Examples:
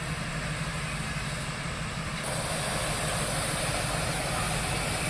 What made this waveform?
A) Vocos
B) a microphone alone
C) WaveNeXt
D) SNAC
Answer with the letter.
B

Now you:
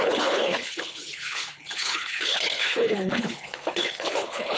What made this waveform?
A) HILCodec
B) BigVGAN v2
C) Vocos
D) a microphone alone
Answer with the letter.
A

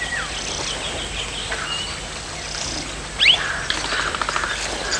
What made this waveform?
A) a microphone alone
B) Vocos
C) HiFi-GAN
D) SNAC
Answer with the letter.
A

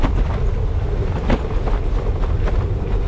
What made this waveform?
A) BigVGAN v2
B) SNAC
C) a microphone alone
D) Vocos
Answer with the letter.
C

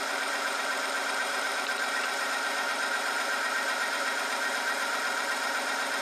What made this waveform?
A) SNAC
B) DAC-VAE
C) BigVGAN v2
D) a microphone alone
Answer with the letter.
C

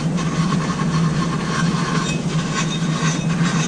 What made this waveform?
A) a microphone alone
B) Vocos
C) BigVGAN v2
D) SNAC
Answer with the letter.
A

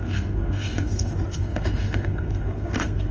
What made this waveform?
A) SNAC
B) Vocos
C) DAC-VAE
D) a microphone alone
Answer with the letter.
A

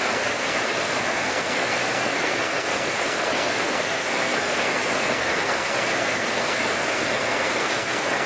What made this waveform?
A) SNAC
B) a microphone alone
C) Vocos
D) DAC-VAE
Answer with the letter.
A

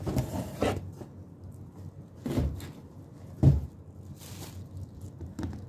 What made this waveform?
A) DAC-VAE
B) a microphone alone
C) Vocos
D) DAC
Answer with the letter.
B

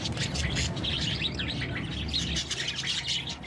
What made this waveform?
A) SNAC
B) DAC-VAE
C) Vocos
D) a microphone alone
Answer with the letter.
D